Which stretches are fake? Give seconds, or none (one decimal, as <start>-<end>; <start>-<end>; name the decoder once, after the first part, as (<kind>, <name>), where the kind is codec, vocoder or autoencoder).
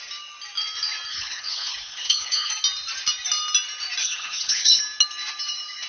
1.1-2.5 (codec, HILCodec); 4.0-4.8